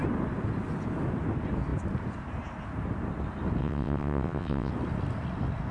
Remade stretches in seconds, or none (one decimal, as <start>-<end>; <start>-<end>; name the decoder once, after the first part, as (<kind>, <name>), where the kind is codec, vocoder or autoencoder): 3.6-4.7 (vocoder, WaveNeXt)